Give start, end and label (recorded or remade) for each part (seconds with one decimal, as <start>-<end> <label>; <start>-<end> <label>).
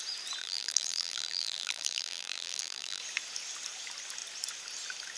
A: 0.0-0.4 recorded; 0.4-3.0 remade; 3.0-5.2 recorded